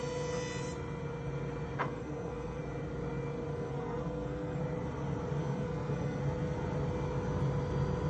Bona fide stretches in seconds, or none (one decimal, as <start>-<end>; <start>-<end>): 0.0-1.8; 2.6-3.5; 4.6-5.4; 6.2-8.1